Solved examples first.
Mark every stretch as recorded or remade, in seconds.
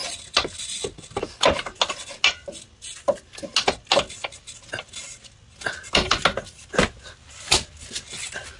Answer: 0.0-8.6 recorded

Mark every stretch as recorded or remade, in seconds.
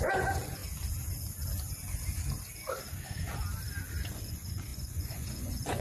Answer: 0.0-0.6 remade; 0.6-4.1 recorded; 4.1-5.8 remade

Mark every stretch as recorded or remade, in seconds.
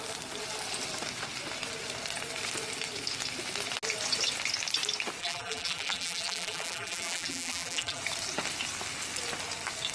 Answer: 0.0-5.2 recorded; 5.2-8.0 remade; 8.0-9.9 recorded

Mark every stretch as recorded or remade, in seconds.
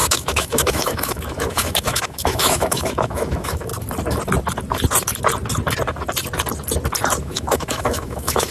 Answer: 0.0-3.7 remade; 3.7-7.2 recorded; 7.2-8.5 remade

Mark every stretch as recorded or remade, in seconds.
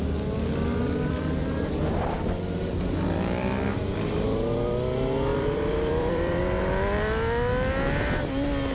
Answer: 0.0-1.4 recorded; 1.4-2.1 remade; 2.1-5.3 recorded; 5.3-6.4 remade; 6.4-8.7 recorded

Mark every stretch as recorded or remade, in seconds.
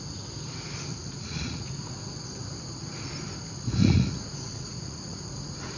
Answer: 0.0-0.9 recorded; 0.9-1.8 remade; 1.8-3.8 recorded; 3.8-5.8 remade